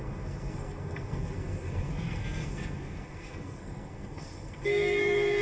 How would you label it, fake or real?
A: fake